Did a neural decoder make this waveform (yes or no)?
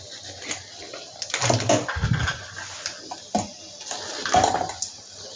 no